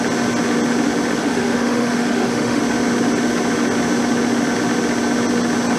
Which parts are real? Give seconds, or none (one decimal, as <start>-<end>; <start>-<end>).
0.0-1.2; 2.6-5.8